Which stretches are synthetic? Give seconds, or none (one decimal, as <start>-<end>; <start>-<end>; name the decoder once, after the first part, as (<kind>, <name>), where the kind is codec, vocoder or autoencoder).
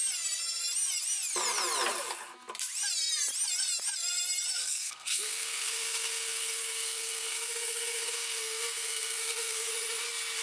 4.6-9.7 (codec, SNAC)